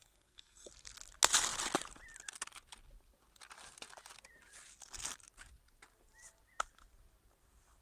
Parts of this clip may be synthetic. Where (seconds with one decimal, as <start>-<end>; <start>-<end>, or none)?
0.0-0.7

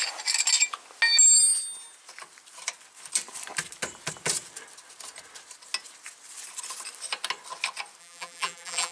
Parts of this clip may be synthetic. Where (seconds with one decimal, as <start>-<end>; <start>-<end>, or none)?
8.0-8.9

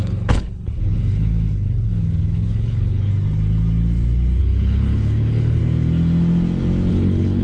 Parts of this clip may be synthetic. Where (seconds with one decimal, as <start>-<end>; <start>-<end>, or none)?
0.0-3.1; 4.4-5.6; 6.9-7.4

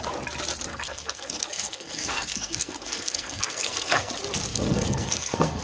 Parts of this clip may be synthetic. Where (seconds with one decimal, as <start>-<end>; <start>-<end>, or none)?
0.7-4.1; 4.5-5.6

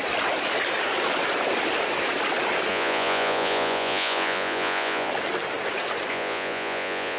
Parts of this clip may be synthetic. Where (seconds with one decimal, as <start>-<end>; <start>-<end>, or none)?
2.7-5.1; 6.1-7.2

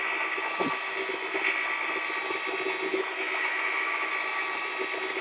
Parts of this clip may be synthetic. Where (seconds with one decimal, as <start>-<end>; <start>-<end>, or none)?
2.9-4.1